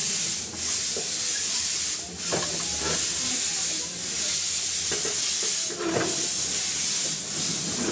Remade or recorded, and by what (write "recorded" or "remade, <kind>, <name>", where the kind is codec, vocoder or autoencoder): recorded